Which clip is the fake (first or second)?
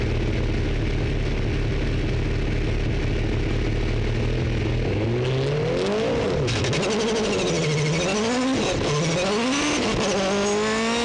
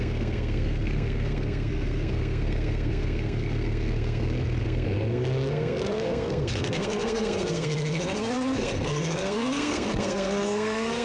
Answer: second